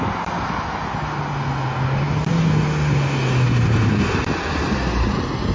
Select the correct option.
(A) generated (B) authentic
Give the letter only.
B